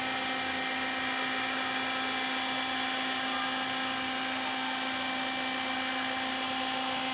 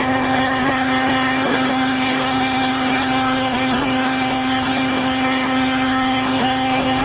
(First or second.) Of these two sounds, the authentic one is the first